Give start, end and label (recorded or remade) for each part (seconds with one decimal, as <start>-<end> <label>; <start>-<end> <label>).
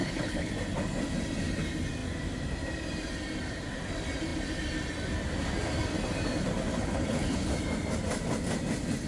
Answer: 0.0-0.5 remade; 0.5-6.7 recorded; 6.7-7.5 remade; 7.5-9.1 recorded